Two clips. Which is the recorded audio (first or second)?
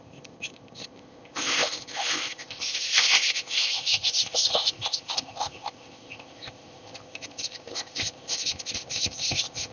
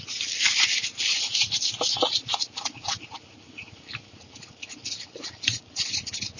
second